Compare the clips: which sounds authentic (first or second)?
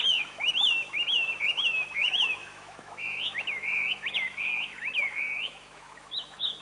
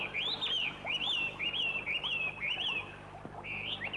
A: second